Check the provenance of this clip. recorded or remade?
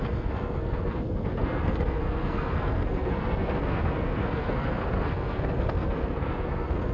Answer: remade